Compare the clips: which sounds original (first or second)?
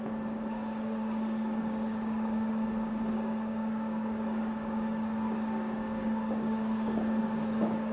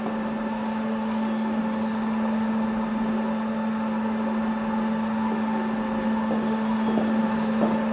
second